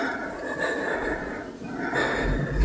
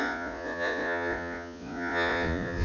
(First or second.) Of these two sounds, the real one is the first